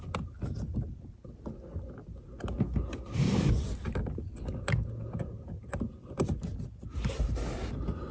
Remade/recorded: recorded